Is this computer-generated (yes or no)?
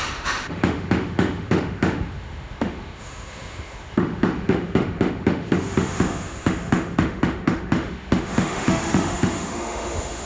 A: yes